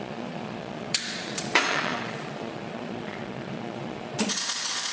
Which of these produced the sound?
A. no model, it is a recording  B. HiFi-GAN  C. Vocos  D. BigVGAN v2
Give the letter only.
C